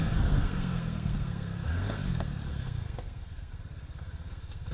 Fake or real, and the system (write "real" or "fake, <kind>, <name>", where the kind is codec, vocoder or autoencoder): fake, codec, SNAC